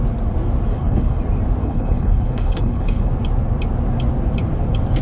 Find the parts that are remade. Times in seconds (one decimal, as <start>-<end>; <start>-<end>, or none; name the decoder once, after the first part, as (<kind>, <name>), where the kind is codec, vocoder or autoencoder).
0.7-1.2 (codec, HILCodec); 1.6-3.1